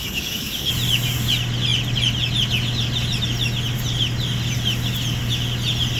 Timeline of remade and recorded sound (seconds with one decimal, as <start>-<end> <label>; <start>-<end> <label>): 0.0-0.7 remade; 0.7-6.0 recorded